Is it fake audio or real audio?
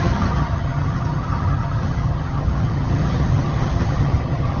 fake